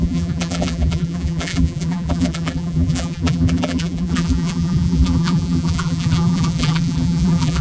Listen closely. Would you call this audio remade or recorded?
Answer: remade